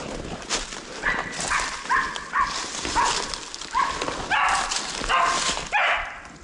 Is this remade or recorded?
recorded